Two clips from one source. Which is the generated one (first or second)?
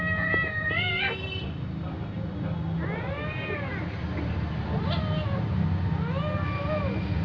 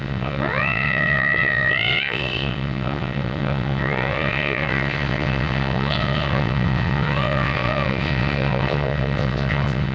second